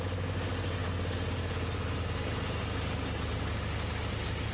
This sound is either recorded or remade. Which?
recorded